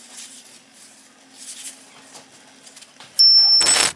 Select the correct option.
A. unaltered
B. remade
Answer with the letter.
A